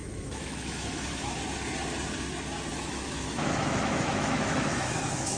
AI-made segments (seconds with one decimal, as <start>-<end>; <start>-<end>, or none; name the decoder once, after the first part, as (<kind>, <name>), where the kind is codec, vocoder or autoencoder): 0.0-1.3 (autoencoder, DAC-VAE); 2.7-5.4